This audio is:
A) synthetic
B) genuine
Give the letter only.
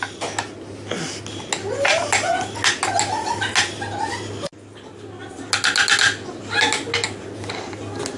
B